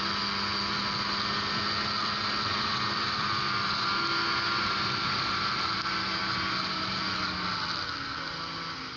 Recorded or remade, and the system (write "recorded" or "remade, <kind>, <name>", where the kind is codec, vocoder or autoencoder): recorded